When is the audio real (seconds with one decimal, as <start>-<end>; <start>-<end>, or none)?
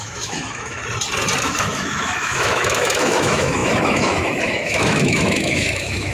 0.8-1.4